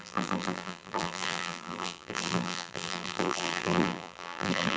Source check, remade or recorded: remade